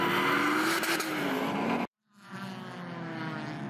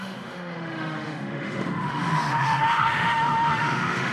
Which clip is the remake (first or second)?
second